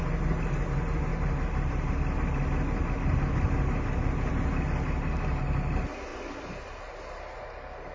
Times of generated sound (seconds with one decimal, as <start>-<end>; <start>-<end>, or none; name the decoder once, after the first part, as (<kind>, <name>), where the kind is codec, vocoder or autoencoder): 1.1-1.9 (vocoder, BigVGAN v2); 6.1-6.8